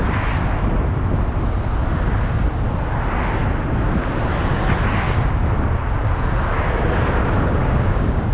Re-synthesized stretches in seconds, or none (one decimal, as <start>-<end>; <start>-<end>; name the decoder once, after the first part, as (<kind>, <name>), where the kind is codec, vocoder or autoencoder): 7.6-8.3 (codec, DAC)